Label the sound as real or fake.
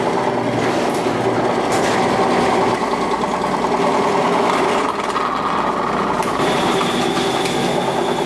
real